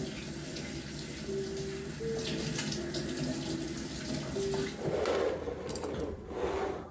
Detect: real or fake real